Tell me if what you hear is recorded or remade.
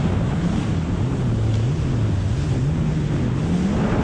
recorded